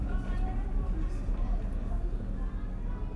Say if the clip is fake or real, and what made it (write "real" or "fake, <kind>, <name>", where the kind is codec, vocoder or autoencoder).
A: real